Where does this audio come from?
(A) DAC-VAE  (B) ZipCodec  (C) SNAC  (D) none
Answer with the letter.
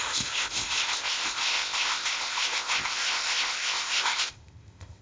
B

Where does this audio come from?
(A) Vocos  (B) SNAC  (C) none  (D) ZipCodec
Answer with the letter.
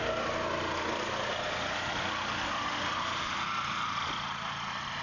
C